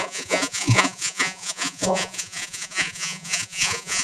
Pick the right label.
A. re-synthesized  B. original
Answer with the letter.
A